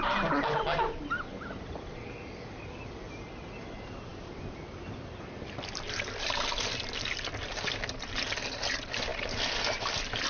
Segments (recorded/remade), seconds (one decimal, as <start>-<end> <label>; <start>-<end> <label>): 0.0-10.3 recorded